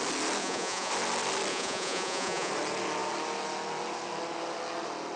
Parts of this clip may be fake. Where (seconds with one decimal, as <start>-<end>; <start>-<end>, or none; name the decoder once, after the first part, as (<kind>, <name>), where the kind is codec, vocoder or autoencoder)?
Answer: 0.4-0.9 (vocoder, Vocos); 1.5-2.5